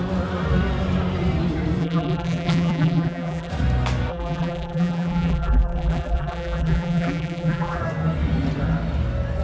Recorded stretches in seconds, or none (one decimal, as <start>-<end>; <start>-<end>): 0.0-1.8; 3.5-4.1; 7.8-9.4